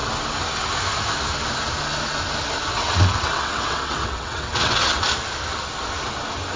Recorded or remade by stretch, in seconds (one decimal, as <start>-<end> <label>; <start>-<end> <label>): 0.0-2.7 recorded; 2.7-5.0 remade; 5.0-6.6 recorded